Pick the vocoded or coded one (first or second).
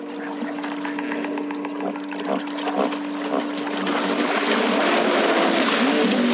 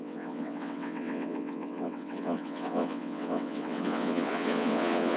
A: second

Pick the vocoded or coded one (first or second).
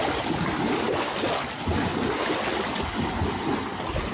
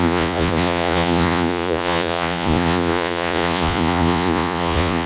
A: second